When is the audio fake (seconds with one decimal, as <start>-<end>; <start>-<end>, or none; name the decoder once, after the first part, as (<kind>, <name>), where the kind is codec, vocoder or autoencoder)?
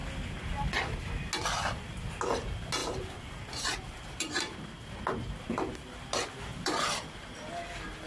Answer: 2.8-5.0 (vocoder, BigVGAN v2); 6.5-7.5